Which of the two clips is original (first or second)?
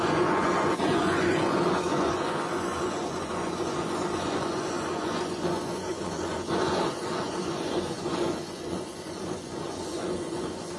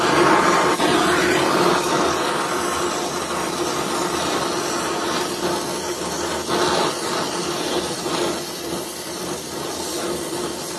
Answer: second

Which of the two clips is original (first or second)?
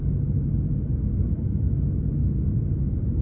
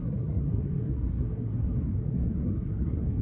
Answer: first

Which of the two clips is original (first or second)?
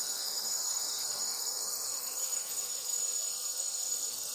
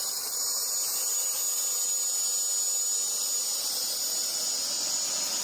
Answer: second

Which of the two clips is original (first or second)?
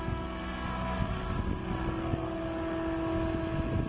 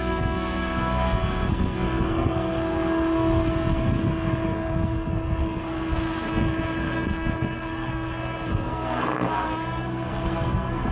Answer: first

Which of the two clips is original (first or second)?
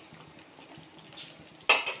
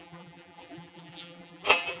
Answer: first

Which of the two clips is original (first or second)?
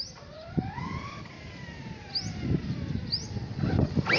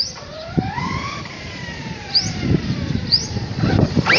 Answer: first